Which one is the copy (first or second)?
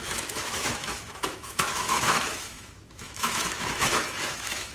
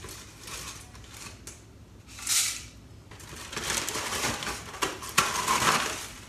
first